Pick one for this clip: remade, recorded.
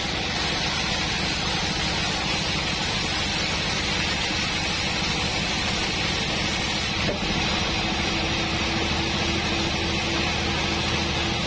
recorded